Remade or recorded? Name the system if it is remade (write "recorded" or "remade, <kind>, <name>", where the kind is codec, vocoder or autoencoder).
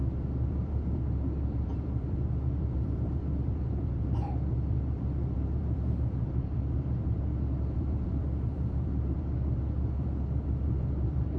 remade, vocoder, BigVGAN v2